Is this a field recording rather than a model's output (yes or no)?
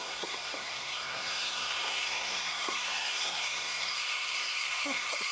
no